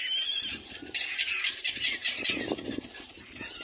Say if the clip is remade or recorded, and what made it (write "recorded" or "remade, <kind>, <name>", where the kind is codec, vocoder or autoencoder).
recorded